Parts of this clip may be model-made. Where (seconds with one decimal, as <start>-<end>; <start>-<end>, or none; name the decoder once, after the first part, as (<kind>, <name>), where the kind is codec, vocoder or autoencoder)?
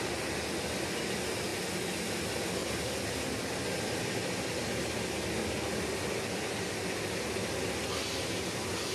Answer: none